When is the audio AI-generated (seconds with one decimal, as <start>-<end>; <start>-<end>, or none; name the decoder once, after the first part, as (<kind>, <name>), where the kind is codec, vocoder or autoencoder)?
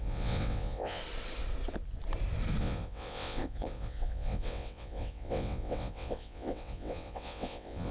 0.0-1.0 (vocoder, WaveNeXt); 2.6-7.9